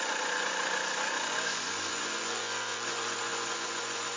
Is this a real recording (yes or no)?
no